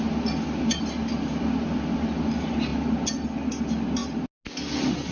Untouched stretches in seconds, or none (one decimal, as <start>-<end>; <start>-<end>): 0.0-5.1